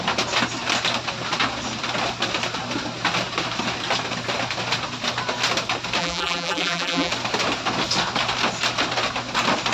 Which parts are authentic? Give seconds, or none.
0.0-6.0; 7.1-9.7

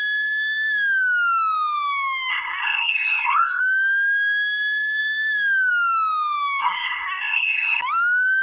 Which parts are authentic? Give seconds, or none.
0.0-2.3; 3.6-6.6; 7.8-8.4

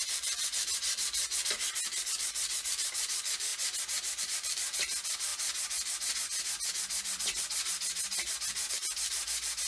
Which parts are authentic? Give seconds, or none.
3.5-4.2; 5.3-8.7

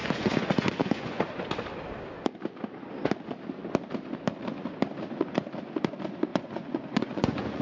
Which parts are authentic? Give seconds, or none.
1.2-6.3

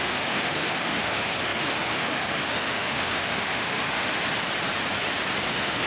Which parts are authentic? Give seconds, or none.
4.2-5.5